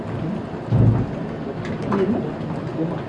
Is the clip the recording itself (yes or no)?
yes